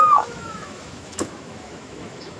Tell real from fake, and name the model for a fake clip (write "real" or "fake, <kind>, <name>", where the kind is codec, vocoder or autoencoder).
fake, autoencoder, DAC-VAE